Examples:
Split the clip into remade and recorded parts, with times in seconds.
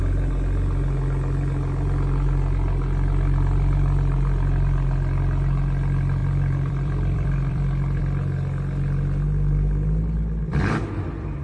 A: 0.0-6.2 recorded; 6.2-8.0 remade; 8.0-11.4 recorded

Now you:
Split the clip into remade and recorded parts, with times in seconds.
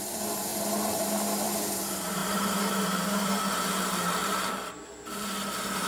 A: 0.0-5.9 remade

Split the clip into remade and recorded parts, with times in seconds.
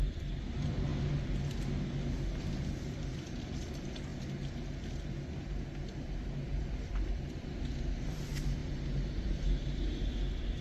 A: 0.0-0.9 remade; 0.9-2.6 recorded; 2.6-4.1 remade; 4.1-6.0 recorded; 6.0-8.6 remade; 8.6-9.1 recorded; 9.1-10.6 remade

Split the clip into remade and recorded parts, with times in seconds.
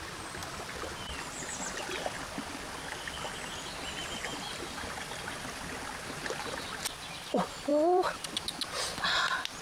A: 0.0-0.4 recorded; 0.4-1.1 remade; 1.1-4.0 recorded; 4.0-5.9 remade; 5.9-9.6 recorded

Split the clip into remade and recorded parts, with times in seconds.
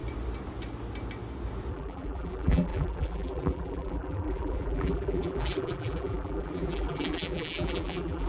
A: 0.0-1.7 recorded; 1.7-8.3 remade